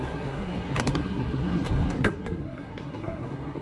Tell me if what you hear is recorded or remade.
remade